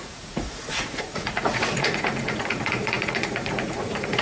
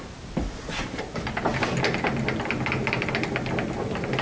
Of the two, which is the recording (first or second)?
second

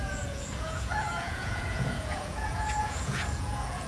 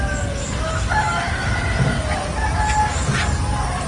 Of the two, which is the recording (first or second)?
second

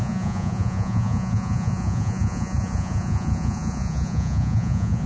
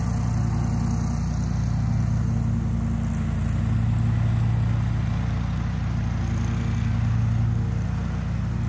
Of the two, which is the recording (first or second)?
second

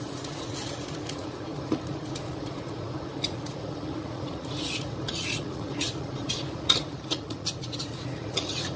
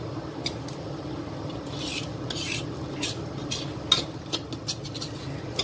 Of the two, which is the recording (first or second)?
second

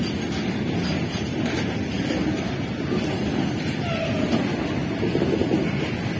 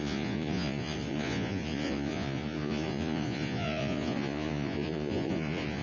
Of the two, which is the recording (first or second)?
first